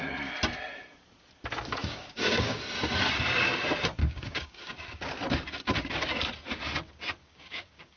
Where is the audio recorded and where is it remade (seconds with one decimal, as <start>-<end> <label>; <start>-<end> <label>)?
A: 0.0-1.8 recorded; 1.8-2.6 remade; 2.6-4.0 recorded; 4.0-4.7 remade; 4.7-7.2 recorded; 7.2-8.0 remade